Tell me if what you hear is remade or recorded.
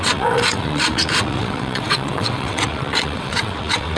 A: remade